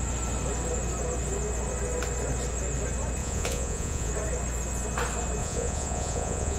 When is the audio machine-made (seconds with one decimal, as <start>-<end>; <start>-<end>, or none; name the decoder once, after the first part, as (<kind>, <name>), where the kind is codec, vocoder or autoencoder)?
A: 3.2-4.1 (vocoder, Vocos); 5.4-6.6